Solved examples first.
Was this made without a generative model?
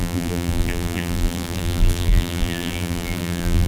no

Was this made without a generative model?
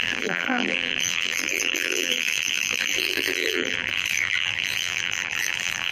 no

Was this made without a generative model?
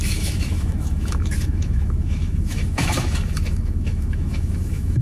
no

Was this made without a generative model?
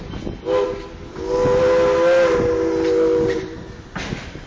yes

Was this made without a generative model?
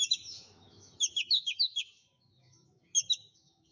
no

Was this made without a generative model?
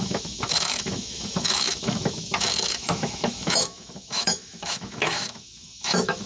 no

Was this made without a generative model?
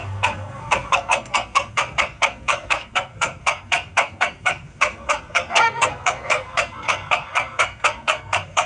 no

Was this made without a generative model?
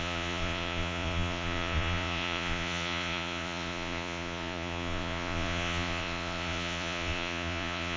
no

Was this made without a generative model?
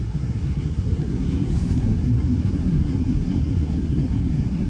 no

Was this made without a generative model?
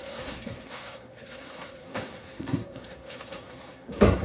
no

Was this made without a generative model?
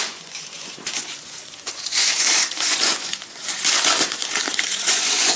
no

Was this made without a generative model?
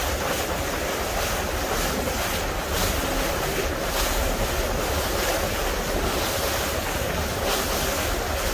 yes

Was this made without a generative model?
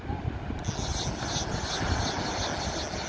yes